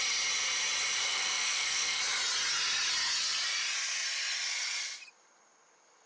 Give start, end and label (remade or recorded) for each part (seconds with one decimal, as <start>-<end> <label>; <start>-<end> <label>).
0.0-1.0 recorded; 1.0-2.0 remade; 2.0-6.1 recorded